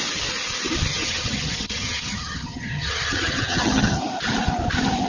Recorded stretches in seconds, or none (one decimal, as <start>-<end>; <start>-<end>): 0.0-0.9; 4.0-5.1